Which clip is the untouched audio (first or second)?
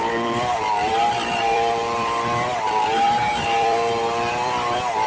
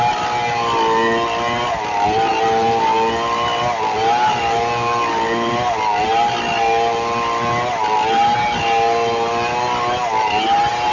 second